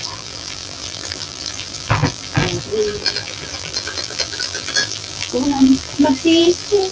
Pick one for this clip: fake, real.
fake